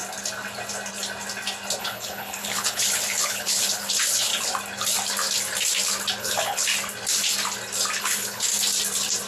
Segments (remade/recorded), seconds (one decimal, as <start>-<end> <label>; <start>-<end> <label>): 0.0-1.8 recorded; 1.8-4.3 remade; 4.3-6.2 recorded; 6.2-6.7 remade; 6.7-8.0 recorded; 8.0-8.5 remade; 8.5-9.3 recorded